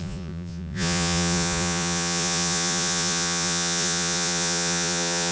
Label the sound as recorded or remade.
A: remade